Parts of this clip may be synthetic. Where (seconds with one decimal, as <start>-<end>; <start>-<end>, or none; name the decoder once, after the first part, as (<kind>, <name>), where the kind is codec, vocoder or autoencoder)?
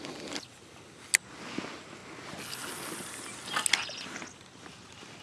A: none